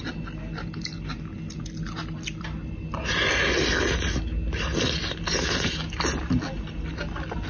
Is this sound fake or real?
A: real